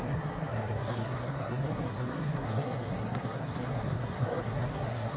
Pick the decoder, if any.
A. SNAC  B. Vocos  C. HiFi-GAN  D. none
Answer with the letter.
A